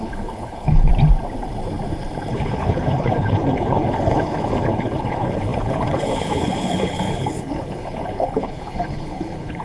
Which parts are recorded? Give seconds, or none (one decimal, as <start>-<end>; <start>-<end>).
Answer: 0.9-2.3